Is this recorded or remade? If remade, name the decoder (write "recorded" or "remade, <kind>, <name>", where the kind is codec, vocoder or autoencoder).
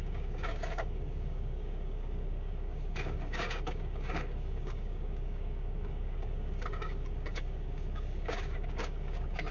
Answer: remade, codec, DAC